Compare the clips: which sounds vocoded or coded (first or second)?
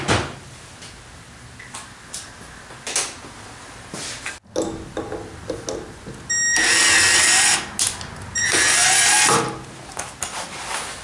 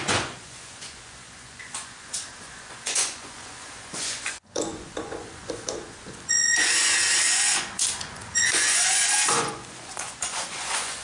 second